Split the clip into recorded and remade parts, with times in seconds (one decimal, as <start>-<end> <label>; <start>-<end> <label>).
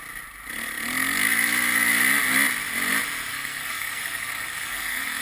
0.0-3.3 recorded; 3.3-5.2 remade